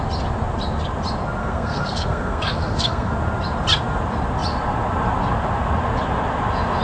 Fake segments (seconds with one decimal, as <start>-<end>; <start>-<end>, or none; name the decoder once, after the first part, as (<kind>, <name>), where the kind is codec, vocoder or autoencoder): 1.4-3.1 (codec, SNAC)